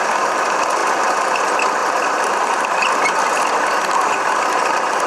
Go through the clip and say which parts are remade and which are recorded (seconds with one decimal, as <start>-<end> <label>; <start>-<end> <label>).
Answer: 0.0-5.1 recorded